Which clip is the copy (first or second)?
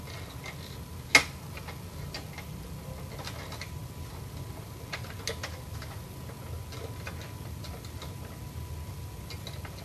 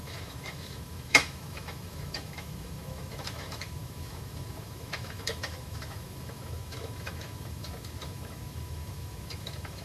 second